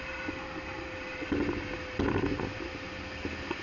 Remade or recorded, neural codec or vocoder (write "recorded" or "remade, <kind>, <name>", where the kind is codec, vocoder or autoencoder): recorded